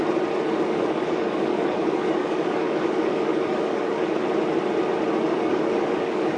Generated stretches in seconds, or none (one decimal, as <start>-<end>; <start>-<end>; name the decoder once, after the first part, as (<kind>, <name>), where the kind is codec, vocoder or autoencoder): 0.5-4.2 (codec, DAC); 5.4-6.4